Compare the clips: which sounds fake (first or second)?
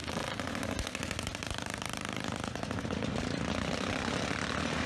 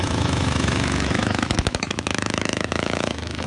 second